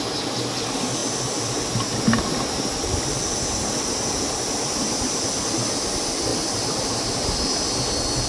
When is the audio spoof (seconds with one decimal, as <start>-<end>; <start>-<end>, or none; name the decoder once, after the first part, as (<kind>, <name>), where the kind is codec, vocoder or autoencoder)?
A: 6.3-6.8 (vocoder, BigVGAN v2)